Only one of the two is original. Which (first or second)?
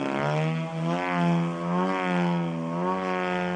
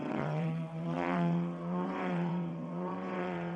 first